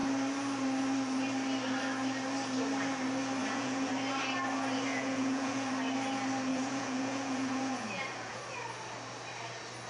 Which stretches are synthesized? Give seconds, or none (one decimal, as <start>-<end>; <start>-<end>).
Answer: 3.4-3.9; 4.9-5.7; 6.5-8.4